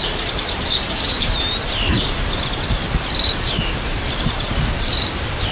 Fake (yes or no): yes